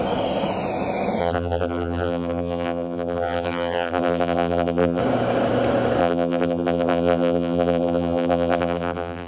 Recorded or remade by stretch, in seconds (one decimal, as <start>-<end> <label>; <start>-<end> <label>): 0.0-1.2 recorded; 1.2-5.0 remade; 5.0-6.0 recorded; 6.0-9.3 remade